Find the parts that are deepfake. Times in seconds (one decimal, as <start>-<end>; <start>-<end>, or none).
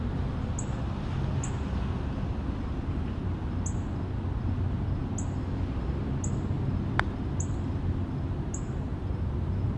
none